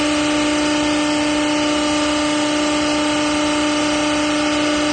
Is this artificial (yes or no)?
no